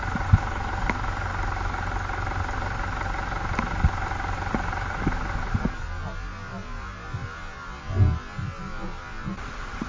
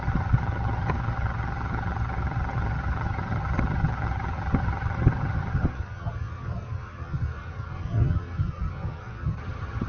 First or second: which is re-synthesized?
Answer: second